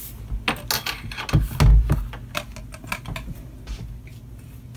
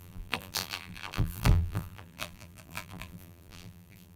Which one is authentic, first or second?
first